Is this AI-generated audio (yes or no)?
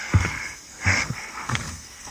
yes